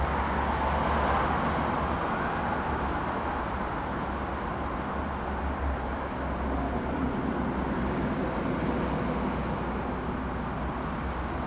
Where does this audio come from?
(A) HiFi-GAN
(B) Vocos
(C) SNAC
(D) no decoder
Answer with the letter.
D